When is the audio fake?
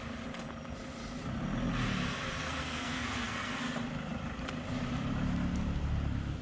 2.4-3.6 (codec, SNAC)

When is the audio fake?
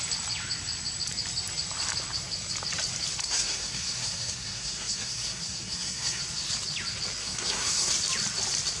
3.2-6.2 (codec, SNAC); 7.2-7.9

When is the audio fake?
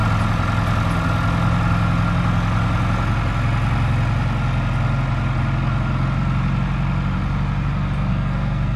8.1-8.8 (codec, SNAC)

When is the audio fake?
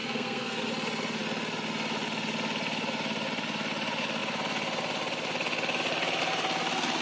0.0-0.7 (codec, SNAC)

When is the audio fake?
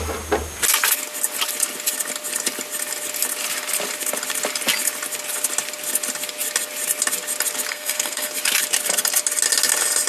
7.7-8.3 (codec, SNAC)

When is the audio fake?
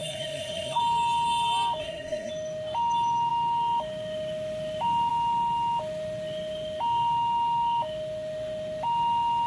0.0-0.8 (codec, SNAC); 1.8-2.3